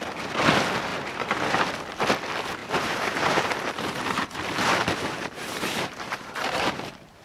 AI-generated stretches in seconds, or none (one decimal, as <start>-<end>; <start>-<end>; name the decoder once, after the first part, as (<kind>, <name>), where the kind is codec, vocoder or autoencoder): 0.9-1.7 (vocoder, BigVGAN v2); 2.6-7.2